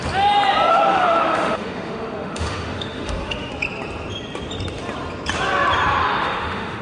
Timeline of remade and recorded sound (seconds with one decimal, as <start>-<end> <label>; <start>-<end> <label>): 0.0-0.7 recorded; 0.7-3.5 remade; 3.5-6.0 recorded; 6.0-6.8 remade